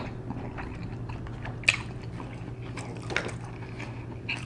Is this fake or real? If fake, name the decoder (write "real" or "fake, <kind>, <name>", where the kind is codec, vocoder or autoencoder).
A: real